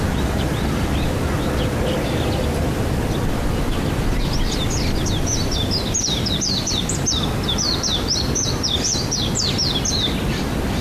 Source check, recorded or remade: recorded